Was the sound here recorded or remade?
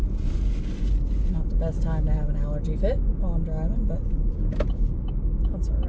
recorded